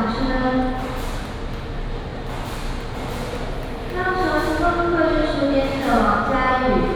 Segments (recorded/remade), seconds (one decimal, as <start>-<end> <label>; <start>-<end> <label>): 0.0-7.0 recorded